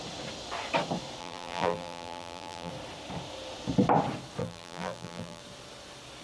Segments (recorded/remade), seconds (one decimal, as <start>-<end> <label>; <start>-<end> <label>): 0.0-1.2 recorded; 1.2-2.7 remade; 2.7-4.4 recorded; 4.4-5.4 remade; 5.4-6.2 recorded